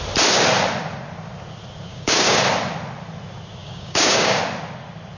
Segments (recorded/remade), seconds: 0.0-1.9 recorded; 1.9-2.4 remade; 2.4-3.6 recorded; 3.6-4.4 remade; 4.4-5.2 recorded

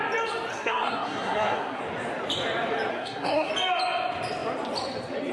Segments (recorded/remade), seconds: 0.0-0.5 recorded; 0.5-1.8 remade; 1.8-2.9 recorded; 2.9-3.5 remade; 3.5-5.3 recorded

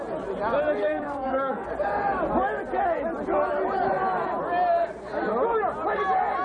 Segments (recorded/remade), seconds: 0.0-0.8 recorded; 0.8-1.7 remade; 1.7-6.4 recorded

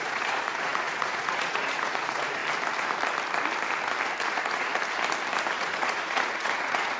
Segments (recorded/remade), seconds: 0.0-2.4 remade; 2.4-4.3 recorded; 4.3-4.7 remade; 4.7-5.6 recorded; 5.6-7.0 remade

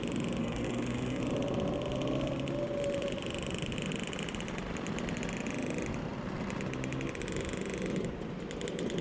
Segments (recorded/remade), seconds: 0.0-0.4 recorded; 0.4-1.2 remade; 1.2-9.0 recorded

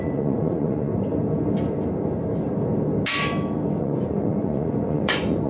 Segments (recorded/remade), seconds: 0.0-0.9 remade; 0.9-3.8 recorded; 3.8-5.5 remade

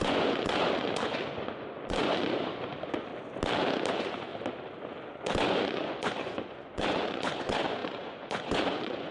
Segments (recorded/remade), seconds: 0.0-3.1 remade; 3.1-3.9 recorded; 3.9-4.3 remade; 4.3-5.1 recorded; 5.1-9.1 remade

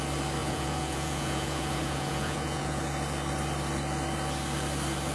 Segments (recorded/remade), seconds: 0.0-0.4 recorded; 0.4-2.8 remade; 2.8-5.1 recorded